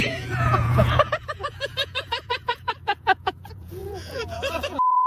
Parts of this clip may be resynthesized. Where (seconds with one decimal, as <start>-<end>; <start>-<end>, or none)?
0.0-5.1